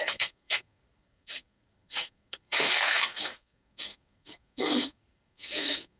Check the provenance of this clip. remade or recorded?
remade